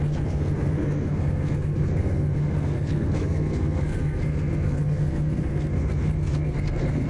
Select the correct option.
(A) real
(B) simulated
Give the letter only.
B